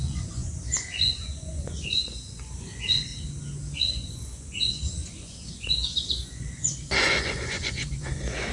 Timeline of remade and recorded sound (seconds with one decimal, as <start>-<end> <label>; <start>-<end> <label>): 0.0-3.1 remade; 3.1-3.8 recorded; 3.8-8.5 remade

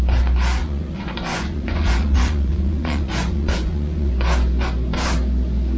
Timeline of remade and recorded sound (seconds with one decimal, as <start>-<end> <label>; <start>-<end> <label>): 0.0-0.6 recorded; 0.6-4.1 remade; 4.1-5.8 recorded

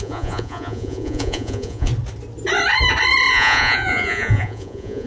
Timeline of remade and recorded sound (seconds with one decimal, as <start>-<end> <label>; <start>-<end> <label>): 0.0-1.9 remade; 1.9-3.3 recorded; 3.3-5.1 remade

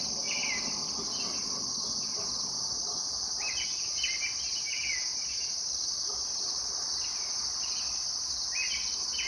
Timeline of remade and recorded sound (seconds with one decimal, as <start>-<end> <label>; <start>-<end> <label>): 0.0-9.3 recorded

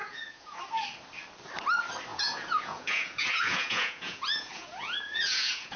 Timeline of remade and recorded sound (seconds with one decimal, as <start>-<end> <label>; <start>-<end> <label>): 0.0-0.6 remade; 0.6-2.1 recorded; 2.1-5.8 remade

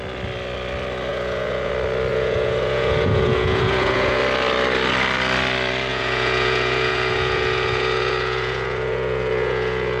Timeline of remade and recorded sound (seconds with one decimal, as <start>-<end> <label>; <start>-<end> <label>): 0.0-1.1 recorded; 1.1-1.7 remade; 1.7-2.1 recorded; 2.1-4.2 remade; 4.2-5.9 recorded; 5.9-10.0 remade